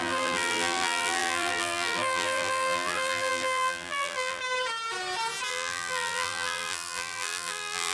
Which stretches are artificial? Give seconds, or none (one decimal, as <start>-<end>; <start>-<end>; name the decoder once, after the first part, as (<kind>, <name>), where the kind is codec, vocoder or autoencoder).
0.0-4.4 (vocoder, BigVGAN v2); 5.5-7.9